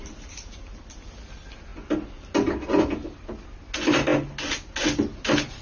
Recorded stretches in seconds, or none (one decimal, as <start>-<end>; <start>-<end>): 0.0-5.6